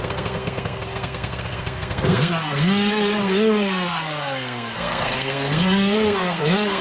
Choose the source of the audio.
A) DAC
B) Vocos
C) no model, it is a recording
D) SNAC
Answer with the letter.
D